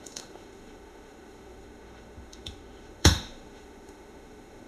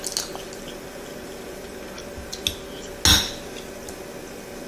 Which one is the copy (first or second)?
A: first